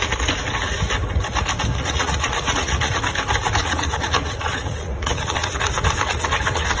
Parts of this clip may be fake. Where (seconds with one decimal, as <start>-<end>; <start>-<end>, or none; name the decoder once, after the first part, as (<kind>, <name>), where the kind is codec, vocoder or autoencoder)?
1.7-3.0 (vocoder, Vocos); 3.6-5.6; 6.1-6.8